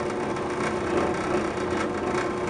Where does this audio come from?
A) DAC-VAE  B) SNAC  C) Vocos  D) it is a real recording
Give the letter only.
D